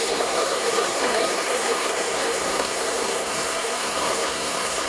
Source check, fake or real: fake